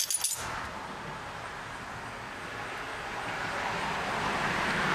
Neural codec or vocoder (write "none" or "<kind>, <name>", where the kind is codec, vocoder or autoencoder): none